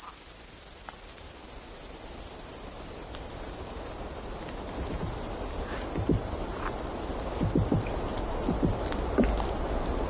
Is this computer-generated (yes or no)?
no